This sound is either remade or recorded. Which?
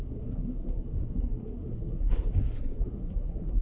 remade